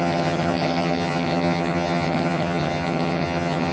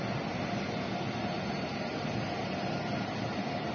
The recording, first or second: second